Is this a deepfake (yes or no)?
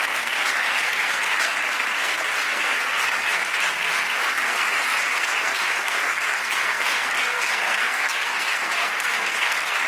yes